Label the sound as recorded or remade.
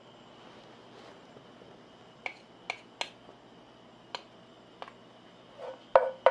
recorded